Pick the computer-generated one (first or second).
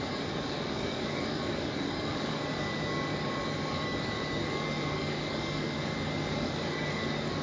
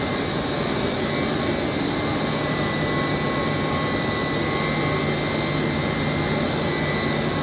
first